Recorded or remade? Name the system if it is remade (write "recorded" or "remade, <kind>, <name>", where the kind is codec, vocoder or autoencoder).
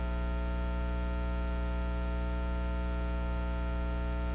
recorded